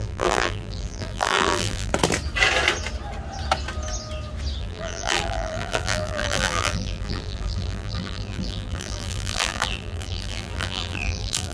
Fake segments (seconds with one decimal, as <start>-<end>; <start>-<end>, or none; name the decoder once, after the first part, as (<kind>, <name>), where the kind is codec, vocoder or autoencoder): 0.0-1.9 (vocoder, BigVGAN v2); 4.6-11.5

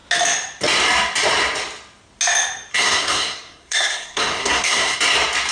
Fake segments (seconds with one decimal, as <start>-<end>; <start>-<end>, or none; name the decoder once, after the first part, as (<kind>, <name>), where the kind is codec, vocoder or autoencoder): 2.7-5.0 (codec, SNAC)

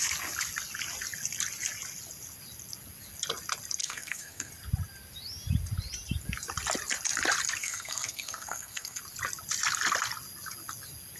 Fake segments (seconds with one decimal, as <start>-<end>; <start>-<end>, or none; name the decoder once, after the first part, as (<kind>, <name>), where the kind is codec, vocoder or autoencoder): 3.8-4.5 (codec, SNAC); 7.6-9.0

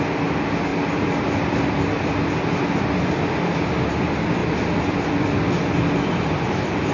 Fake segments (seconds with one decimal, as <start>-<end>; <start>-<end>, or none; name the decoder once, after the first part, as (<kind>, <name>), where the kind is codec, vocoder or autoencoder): none

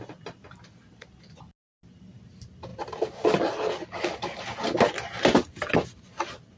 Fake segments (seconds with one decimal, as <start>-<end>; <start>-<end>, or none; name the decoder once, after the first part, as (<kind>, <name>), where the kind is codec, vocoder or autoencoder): none